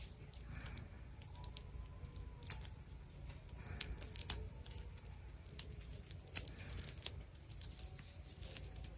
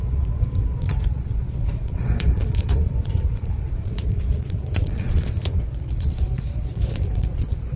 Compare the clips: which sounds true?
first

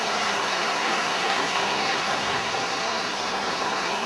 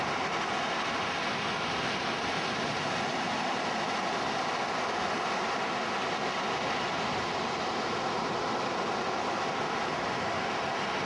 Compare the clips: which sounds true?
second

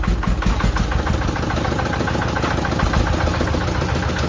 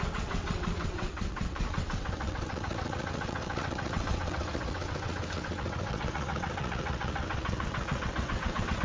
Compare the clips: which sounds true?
first